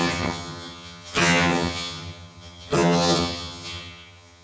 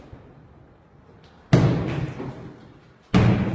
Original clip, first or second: second